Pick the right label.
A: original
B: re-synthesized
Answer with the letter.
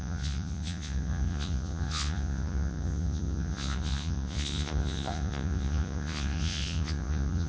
B